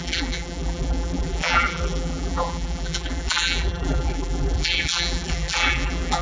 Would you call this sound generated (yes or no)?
yes